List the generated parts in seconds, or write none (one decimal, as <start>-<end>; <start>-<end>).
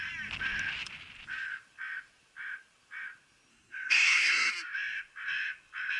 3.5-4.5